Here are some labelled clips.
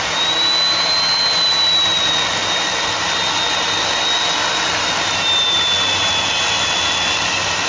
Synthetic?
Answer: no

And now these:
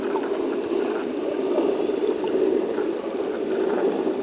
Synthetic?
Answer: no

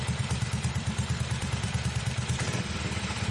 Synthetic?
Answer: yes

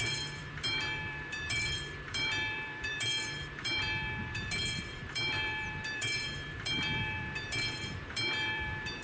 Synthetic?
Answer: yes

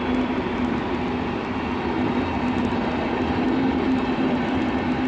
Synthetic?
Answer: no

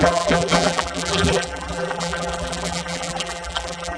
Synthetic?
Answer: yes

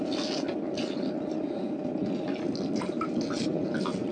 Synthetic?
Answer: no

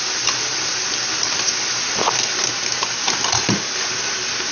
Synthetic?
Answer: no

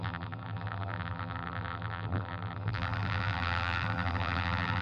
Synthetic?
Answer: yes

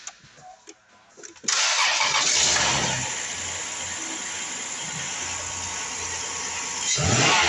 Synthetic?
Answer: no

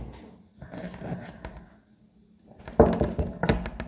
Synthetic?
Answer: no